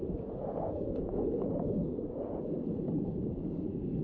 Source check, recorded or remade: remade